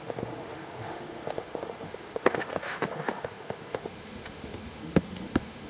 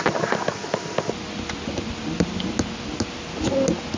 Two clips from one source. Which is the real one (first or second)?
second